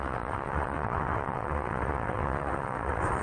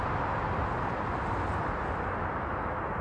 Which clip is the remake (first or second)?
first